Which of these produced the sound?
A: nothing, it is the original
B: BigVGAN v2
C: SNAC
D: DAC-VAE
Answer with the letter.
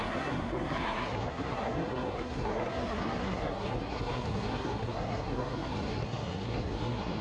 C